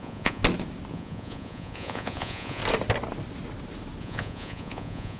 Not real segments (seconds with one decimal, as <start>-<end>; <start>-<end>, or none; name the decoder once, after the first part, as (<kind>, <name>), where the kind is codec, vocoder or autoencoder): 0.0-0.4 (vocoder, Vocos); 0.9-2.6; 4.0-5.2

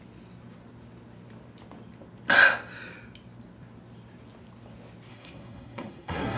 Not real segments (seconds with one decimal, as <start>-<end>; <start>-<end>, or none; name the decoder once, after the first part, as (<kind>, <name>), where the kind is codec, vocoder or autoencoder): 5.1-6.4 (codec, SNAC)

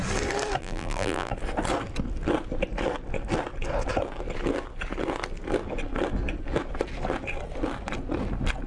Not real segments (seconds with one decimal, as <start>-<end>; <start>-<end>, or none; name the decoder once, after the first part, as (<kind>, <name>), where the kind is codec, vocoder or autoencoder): 0.6-1.3 (vocoder, BigVGAN v2)

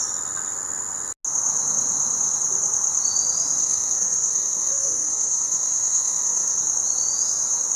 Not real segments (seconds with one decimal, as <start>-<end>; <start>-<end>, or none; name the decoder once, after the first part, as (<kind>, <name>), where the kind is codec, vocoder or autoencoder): 3.6-6.6 (codec, SNAC)

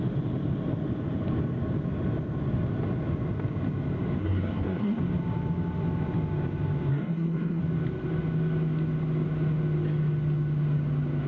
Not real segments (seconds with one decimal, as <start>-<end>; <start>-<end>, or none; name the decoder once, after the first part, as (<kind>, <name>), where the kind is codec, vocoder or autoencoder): 4.2-5.0 (codec, SNAC); 6.9-7.6

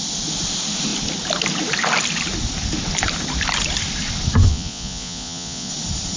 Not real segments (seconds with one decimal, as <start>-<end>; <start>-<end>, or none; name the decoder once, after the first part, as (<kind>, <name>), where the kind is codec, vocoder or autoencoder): 4.5-5.7 (vocoder, Vocos)